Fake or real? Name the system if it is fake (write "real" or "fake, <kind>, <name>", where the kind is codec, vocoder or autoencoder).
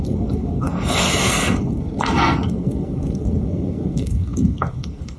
fake, codec, SNAC